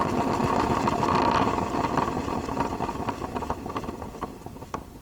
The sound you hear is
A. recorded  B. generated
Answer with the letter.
A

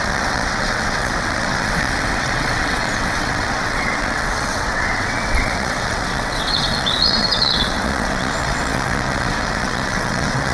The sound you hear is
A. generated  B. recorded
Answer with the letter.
A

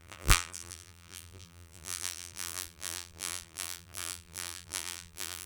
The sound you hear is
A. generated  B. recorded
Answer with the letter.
A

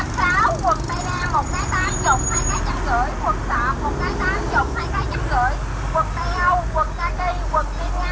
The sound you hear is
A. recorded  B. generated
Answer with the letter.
A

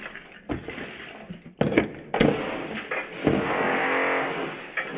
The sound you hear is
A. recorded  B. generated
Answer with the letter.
A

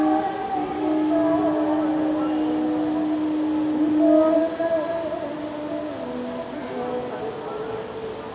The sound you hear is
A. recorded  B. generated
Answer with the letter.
A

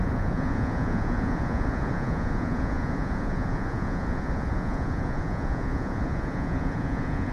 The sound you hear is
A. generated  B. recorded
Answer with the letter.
A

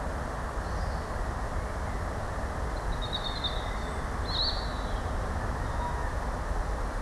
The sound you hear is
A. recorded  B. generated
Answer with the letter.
A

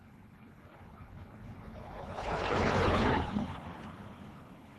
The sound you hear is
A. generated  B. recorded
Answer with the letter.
A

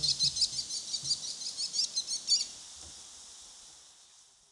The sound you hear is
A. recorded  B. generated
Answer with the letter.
A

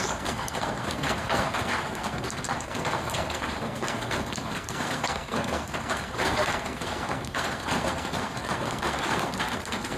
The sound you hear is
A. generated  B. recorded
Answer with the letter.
A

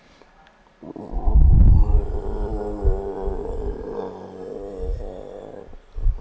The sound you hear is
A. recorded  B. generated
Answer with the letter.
A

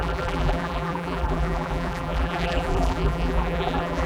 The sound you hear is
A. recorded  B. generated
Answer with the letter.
B